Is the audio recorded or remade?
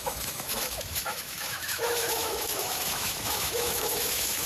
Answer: remade